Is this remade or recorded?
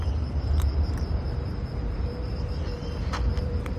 remade